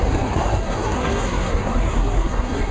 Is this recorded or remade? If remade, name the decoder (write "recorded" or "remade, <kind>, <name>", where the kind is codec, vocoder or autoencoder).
remade, codec, SNAC